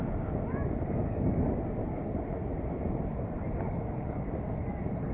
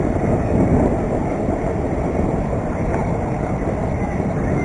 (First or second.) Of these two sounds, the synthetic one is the second